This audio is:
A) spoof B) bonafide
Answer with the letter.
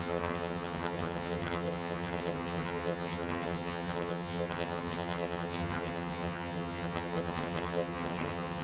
A